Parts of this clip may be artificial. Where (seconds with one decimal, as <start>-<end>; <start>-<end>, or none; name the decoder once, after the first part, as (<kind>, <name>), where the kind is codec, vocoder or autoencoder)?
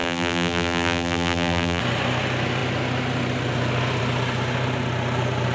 0.0-1.8 (vocoder, BigVGAN v2)